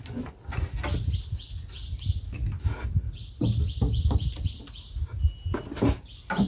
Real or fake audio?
real